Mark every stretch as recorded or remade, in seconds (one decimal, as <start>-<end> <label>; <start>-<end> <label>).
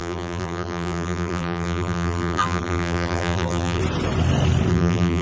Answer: 0.0-3.8 remade; 3.8-4.7 recorded; 4.7-5.2 remade